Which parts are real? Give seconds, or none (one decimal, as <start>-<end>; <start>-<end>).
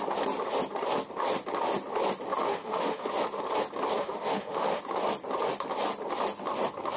0.0-2.5; 3.1-4.0; 4.8-7.0